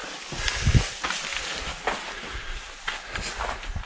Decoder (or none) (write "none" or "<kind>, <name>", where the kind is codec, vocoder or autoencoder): none